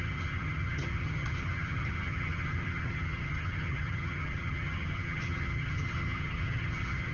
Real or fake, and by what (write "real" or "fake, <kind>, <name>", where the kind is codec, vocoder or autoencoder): fake, vocoder, HiFi-GAN